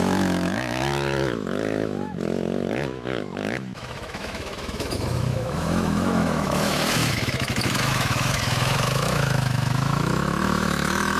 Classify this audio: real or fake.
fake